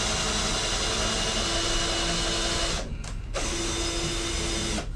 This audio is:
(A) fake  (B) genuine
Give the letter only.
B